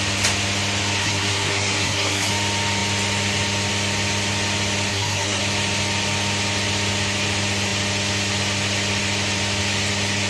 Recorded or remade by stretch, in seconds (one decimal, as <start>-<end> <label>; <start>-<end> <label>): 0.0-1.0 recorded; 1.0-2.3 remade; 2.3-4.9 recorded; 4.9-5.4 remade; 5.4-10.3 recorded